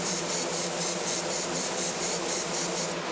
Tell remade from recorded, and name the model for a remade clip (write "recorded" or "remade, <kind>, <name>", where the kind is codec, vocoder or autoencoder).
recorded